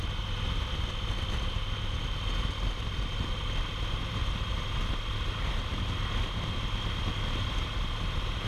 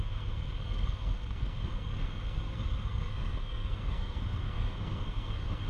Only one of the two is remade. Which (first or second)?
second